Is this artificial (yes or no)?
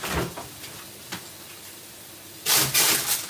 no